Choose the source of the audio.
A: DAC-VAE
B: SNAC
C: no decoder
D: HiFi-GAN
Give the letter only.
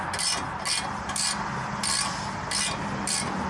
C